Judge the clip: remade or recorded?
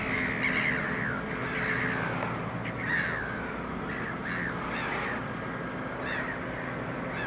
recorded